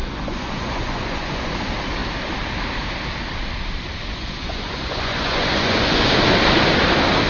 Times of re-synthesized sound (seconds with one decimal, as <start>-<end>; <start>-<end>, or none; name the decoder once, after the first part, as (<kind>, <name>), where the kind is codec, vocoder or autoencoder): 0.0-1.5 (vocoder, Vocos); 4.1-6.1